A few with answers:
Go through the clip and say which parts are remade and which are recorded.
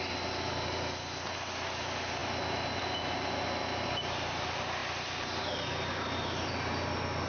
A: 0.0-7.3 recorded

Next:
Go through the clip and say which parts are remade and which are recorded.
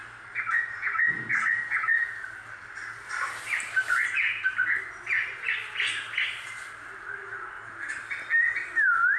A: 0.0-9.2 recorded